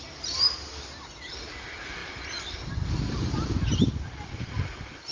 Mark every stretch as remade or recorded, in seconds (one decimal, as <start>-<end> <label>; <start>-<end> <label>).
0.0-5.1 recorded

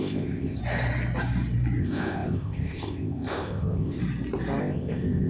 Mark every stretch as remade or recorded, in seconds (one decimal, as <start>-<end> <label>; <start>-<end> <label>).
0.0-0.6 remade; 0.6-1.8 recorded; 1.8-4.0 remade; 4.0-4.6 recorded; 4.6-5.3 remade